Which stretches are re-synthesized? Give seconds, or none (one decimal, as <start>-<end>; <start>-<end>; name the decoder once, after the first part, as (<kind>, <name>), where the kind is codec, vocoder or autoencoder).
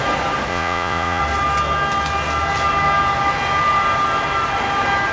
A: 0.5-1.2 (vocoder, Vocos)